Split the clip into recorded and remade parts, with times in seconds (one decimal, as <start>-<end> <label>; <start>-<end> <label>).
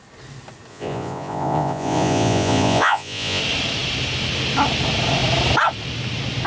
0.0-0.7 recorded; 0.7-3.4 remade; 3.4-6.5 recorded